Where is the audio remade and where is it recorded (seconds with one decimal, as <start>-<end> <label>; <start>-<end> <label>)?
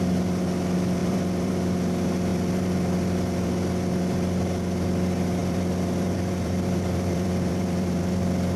0.0-1.0 recorded; 1.0-1.5 remade; 1.5-2.3 recorded; 2.3-3.5 remade; 3.5-5.4 recorded; 5.4-8.0 remade; 8.0-8.6 recorded